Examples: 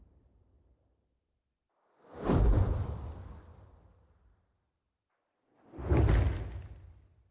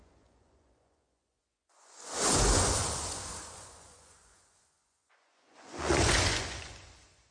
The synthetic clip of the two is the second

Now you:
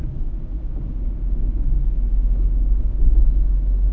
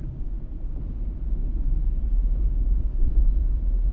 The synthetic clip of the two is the second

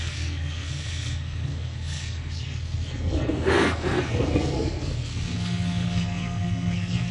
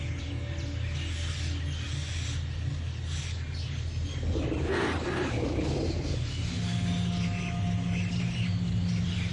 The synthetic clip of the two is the first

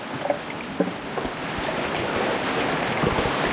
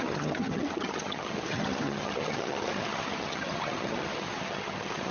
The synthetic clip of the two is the second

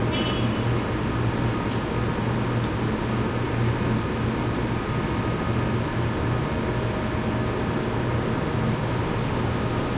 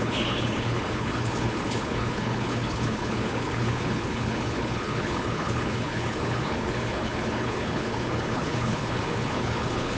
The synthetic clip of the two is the second